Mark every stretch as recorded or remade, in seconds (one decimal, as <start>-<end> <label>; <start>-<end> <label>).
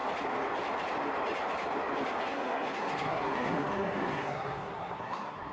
0.0-2.2 recorded; 2.2-5.5 remade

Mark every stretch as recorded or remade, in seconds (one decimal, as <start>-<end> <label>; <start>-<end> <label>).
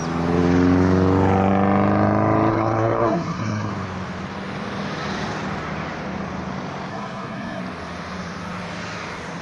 0.0-2.5 recorded; 2.5-3.7 remade; 3.7-6.9 recorded; 6.9-7.6 remade; 7.6-9.4 recorded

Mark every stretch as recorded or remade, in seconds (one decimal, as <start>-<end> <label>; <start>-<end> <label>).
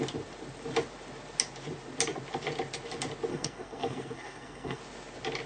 0.0-3.3 recorded; 3.3-4.8 remade; 4.8-5.5 recorded